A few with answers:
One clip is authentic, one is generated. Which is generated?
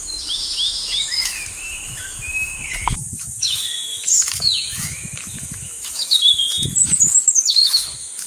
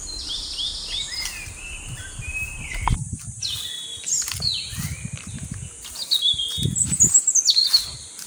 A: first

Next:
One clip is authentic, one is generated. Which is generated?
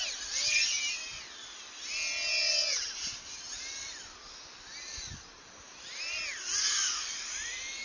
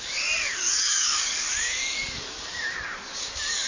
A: second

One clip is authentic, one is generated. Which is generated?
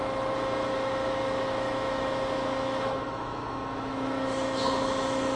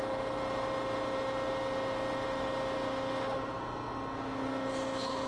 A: first